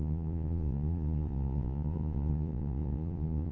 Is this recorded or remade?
remade